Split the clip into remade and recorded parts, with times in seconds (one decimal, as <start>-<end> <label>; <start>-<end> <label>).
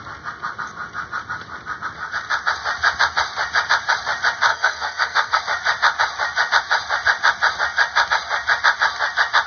0.0-4.5 recorded; 4.5-5.4 remade; 5.4-9.5 recorded